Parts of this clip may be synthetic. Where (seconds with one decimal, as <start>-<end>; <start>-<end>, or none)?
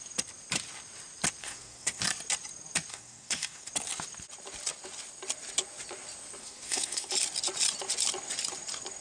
1.4-2.0; 2.9-3.7; 6.4-7.1